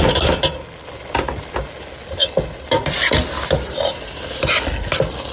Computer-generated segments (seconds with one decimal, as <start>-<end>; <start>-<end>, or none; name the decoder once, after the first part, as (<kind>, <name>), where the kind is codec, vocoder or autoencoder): none